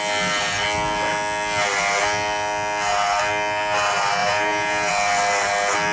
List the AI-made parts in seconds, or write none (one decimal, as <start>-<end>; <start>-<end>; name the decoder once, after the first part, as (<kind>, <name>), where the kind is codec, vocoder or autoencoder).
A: 4.2-4.9 (vocoder, Vocos)